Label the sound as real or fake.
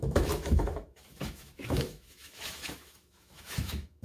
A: fake